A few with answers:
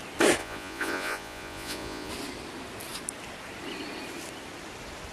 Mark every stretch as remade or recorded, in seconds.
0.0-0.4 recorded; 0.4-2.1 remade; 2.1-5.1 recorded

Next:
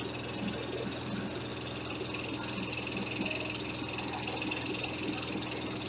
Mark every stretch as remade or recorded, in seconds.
0.0-5.9 recorded

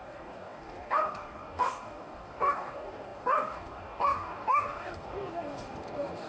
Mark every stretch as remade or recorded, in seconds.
0.0-6.3 remade

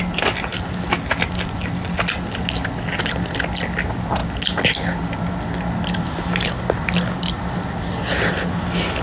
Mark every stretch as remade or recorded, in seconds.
0.0-9.0 recorded

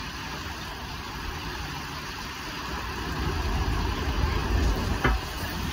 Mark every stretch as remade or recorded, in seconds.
0.0-5.7 recorded

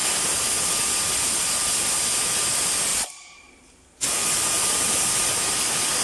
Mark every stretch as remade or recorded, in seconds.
0.0-6.0 recorded

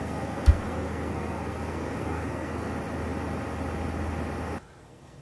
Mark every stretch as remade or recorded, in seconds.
0.0-2.7 remade; 2.7-4.8 recorded; 4.8-5.2 remade